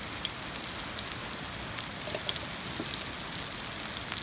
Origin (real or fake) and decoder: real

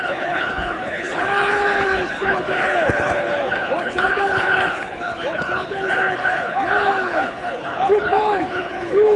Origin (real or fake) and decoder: fake, codec, HILCodec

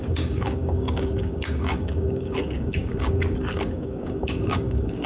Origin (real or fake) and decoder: fake, codec, DAC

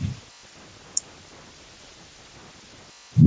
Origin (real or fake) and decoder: real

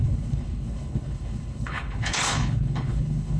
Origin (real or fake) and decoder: fake, codec, HILCodec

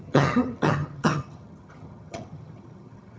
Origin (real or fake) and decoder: fake, vocoder, HiFi-GAN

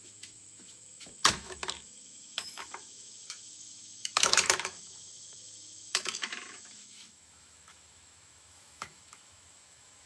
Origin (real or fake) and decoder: fake, autoencoder, DAC-VAE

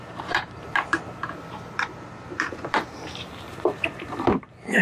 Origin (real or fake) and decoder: fake, vocoder, BigVGAN v2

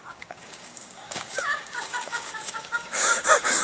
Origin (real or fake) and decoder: fake, codec, DAC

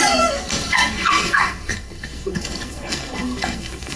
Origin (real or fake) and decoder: fake, codec, SNAC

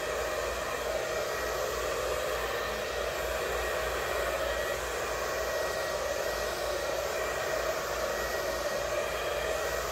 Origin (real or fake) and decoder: real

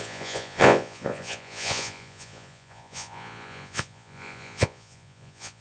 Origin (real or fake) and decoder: fake, vocoder, Vocos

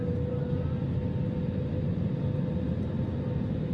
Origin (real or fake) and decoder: real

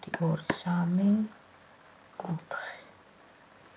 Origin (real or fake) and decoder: real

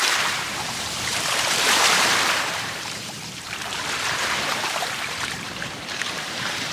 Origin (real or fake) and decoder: fake, vocoder, BigVGAN v2